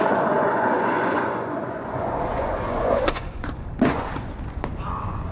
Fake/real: fake